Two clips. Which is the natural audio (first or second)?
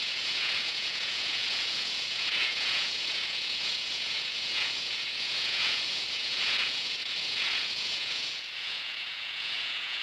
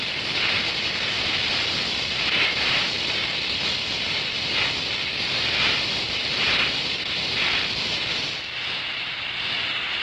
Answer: second